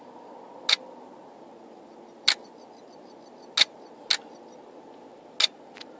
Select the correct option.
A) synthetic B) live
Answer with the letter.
B